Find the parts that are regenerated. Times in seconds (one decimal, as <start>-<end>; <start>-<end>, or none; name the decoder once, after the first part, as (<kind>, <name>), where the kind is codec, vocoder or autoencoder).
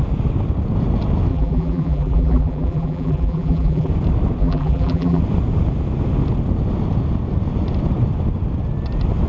1.3-3.9 (vocoder, BigVGAN v2); 4.4-5.2